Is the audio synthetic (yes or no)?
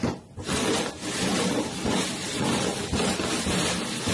no